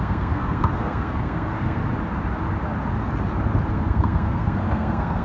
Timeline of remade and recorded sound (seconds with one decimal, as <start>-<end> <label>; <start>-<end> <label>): 0.0-1.8 remade; 1.8-3.7 recorded; 3.7-5.2 remade